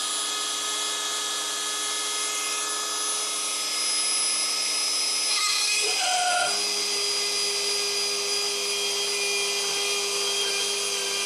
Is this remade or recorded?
recorded